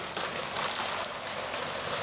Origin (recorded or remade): recorded